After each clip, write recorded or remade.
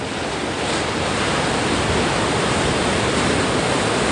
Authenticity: recorded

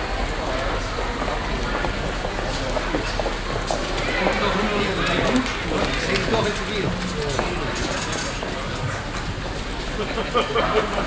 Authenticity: recorded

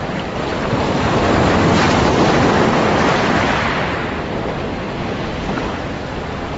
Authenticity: recorded